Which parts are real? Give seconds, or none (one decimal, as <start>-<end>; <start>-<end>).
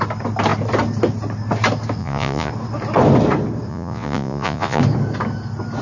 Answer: 0.0-2.0; 2.5-3.7; 4.8-5.8